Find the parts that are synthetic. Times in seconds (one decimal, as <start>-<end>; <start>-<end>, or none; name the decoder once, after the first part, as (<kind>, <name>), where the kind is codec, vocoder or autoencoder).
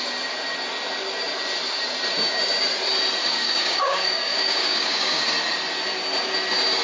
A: 3.2-5.2 (codec, DAC)